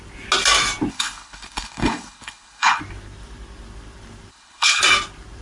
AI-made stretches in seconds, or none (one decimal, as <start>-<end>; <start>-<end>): 0.9-2.8; 4.3-4.8